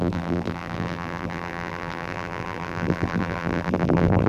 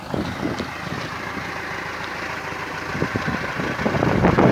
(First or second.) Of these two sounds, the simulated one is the first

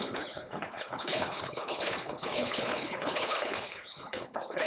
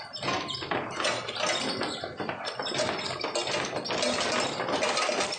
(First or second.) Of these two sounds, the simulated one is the first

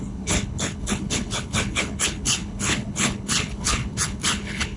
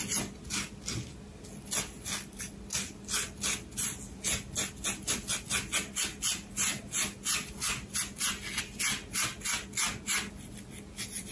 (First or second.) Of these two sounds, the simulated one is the first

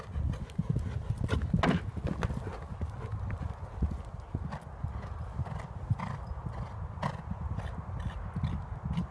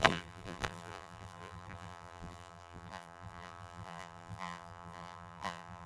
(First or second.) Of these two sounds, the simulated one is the second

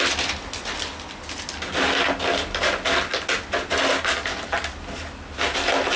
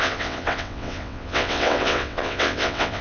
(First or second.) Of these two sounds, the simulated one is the second